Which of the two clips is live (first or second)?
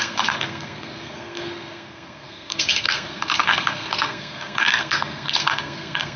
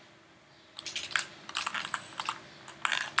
second